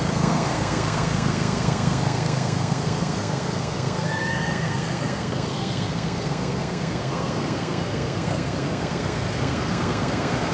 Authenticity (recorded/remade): remade